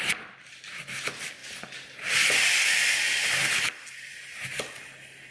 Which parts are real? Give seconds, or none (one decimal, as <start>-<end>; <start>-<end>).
0.0-5.3